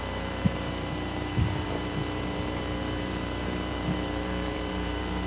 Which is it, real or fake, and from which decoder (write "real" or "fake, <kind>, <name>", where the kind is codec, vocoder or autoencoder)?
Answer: fake, vocoder, BigVGAN v2